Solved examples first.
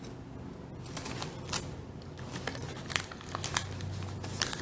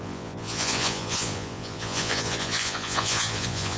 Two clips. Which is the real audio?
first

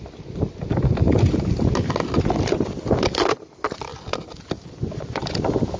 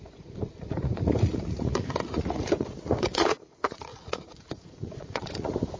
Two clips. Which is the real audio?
first